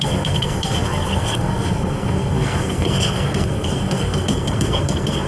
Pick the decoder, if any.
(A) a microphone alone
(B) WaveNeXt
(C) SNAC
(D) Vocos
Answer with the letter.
C